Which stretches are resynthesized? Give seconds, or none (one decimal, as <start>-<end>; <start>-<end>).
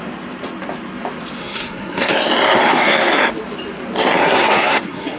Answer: 1.4-2.1; 2.7-3.2; 4.2-5.2